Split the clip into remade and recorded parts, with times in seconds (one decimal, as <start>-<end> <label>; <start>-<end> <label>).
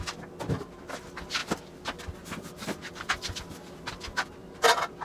0.0-1.4 recorded; 1.4-3.4 remade; 3.4-4.4 recorded; 4.4-5.0 remade